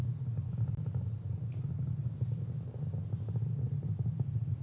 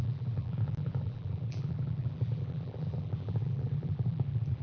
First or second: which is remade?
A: second